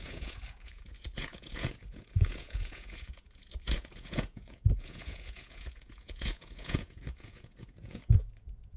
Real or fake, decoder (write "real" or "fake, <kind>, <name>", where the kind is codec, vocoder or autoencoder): fake, vocoder, Vocos